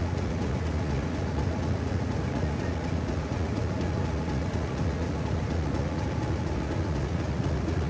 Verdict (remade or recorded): remade